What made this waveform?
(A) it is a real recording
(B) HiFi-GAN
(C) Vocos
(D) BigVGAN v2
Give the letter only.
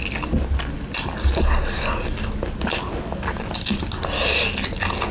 A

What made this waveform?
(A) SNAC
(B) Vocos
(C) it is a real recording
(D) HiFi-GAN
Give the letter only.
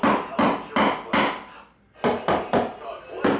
C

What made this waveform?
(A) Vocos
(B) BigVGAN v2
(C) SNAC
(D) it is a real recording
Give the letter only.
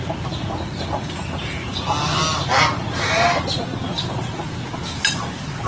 D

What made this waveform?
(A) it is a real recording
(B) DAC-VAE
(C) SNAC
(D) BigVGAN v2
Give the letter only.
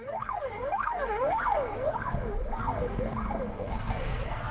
C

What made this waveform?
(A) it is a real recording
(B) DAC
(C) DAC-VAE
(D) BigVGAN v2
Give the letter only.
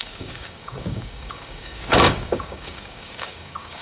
B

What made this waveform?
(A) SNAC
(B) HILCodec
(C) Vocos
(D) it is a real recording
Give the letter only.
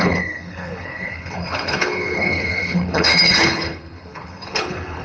B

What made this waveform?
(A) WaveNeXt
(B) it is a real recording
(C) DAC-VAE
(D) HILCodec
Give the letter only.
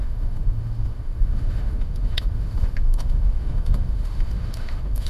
C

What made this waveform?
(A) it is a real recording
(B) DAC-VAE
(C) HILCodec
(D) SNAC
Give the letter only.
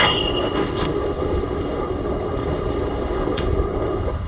C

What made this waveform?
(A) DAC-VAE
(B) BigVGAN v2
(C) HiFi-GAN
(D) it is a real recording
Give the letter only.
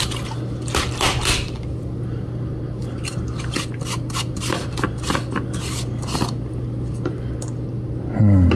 D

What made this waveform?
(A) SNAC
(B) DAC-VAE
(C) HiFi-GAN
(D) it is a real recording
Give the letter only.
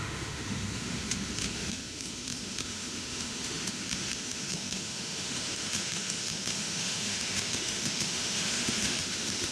B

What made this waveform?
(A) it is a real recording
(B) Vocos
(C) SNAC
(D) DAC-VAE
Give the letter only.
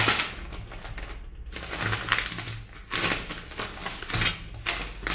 A